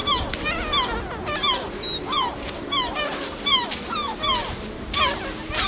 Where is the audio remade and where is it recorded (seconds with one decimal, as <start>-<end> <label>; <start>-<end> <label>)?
0.0-0.6 remade; 0.6-1.2 recorded; 1.2-4.6 remade; 4.6-5.7 recorded